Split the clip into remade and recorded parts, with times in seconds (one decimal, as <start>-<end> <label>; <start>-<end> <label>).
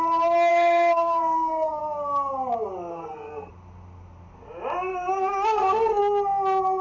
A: 0.0-0.5 recorded; 0.5-1.8 remade; 1.8-2.9 recorded; 2.9-3.5 remade; 3.5-4.9 recorded; 4.9-6.0 remade; 6.0-6.8 recorded